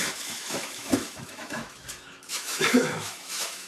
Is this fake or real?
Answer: fake